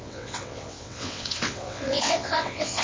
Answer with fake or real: fake